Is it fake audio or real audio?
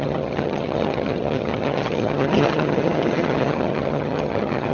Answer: fake